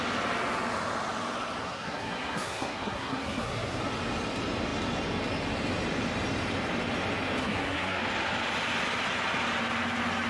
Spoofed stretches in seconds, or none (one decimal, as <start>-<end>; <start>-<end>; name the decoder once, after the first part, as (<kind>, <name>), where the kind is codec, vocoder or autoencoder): 1.6-3.8 (codec, SNAC); 7.4-8.0